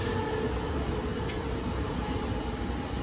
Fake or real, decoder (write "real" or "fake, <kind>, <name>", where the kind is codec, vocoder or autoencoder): real